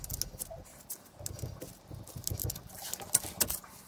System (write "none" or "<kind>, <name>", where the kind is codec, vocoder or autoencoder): none